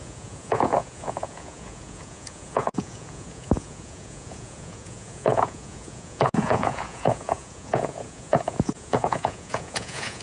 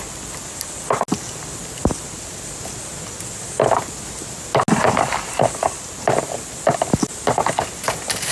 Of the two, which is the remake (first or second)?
first